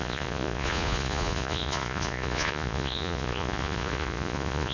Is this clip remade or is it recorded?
remade